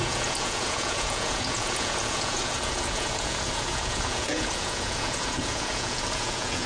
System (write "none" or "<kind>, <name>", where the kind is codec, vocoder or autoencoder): vocoder, Vocos